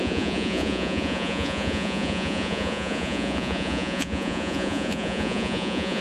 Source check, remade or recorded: remade